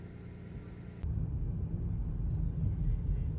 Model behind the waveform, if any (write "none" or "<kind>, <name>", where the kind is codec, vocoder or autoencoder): none